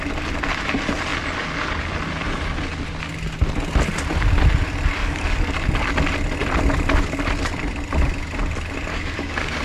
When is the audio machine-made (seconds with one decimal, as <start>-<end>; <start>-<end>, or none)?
5.0-5.7; 8.9-9.6